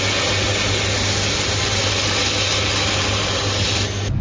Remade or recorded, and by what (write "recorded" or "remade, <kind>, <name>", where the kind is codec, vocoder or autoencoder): recorded